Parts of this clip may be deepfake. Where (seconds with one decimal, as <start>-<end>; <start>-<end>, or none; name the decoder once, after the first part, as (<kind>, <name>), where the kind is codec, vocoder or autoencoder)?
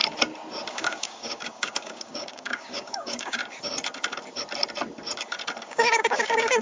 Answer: 0.7-3.4 (codec, DAC); 5.6-6.6